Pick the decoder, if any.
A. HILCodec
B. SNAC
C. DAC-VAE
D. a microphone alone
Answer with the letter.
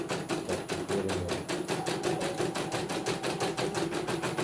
D